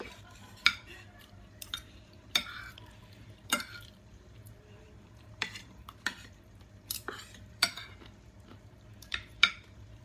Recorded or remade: remade